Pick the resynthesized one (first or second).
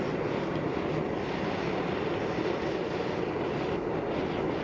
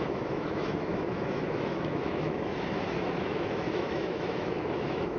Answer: second